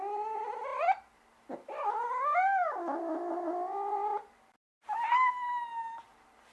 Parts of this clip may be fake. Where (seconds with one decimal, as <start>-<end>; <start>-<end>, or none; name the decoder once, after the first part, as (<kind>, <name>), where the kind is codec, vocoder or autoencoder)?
4.1-5.3 (vocoder, BigVGAN v2)